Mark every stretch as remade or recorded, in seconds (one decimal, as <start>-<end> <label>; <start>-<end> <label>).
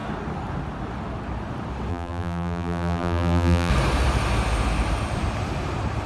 0.0-1.9 recorded; 1.9-3.7 remade; 3.7-6.1 recorded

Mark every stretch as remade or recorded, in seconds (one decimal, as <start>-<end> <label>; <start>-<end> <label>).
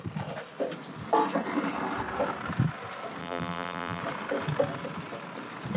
0.0-3.2 recorded; 3.2-4.0 remade; 4.0-5.8 recorded